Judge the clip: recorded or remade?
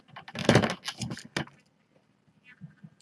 recorded